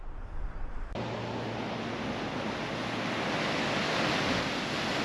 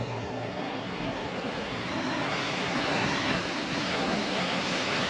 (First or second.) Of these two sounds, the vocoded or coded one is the second